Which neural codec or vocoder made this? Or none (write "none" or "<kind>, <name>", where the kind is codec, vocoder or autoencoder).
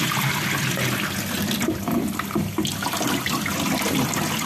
none